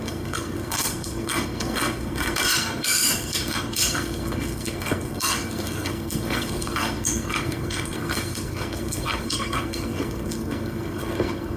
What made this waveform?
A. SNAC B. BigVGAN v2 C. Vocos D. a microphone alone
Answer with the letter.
A